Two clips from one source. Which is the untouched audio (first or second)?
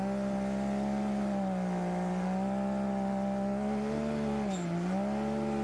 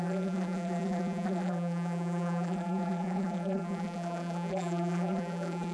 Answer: first